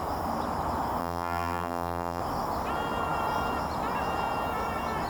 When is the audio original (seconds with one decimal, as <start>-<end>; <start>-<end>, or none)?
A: 0.0-1.0; 2.2-5.1